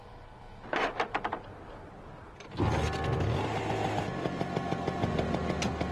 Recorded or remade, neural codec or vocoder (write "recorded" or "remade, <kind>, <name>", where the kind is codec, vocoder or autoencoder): recorded